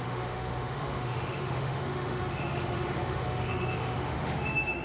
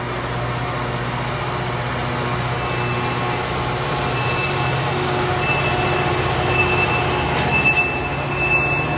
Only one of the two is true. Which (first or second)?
second